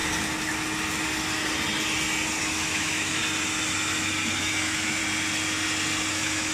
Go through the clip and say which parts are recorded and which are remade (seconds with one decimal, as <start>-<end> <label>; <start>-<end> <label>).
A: 0.0-2.4 recorded; 2.4-3.2 remade; 3.2-4.4 recorded; 4.4-5.0 remade; 5.0-6.1 recorded; 6.1-6.5 remade